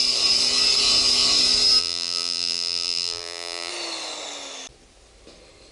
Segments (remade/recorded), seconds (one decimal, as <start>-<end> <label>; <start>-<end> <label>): 0.0-1.8 recorded; 1.8-3.7 remade; 3.7-5.7 recorded